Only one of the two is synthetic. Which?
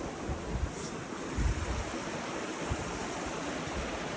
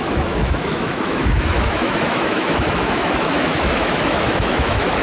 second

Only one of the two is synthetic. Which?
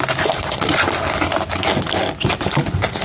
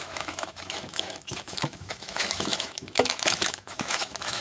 second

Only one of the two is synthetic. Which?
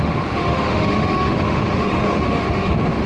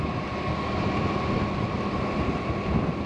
first